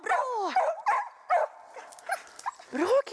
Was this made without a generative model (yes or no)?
yes